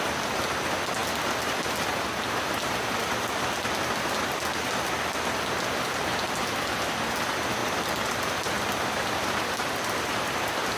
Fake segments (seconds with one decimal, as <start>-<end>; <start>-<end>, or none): 7.6-10.1